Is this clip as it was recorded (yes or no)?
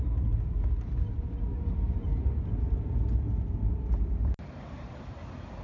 yes